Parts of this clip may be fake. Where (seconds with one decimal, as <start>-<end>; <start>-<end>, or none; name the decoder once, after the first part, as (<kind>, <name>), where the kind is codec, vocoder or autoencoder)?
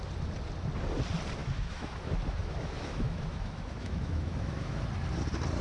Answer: 1.4-4.8 (autoencoder, DAC-VAE)